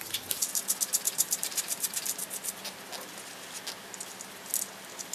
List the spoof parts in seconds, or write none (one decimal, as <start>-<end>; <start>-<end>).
0.0-0.4; 1.1-2.2